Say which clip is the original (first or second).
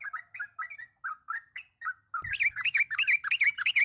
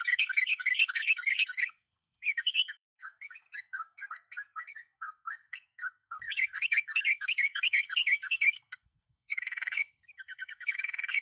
first